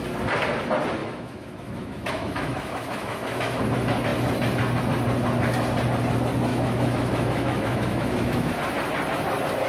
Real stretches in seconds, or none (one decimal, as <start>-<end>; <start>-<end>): 0.0-1.0; 3.6-6.5; 8.5-9.7